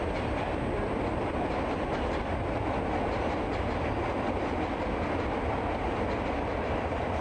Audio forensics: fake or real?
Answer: real